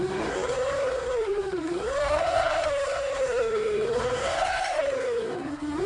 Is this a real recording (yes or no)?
no